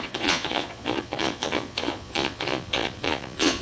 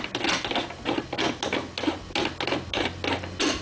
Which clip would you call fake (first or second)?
first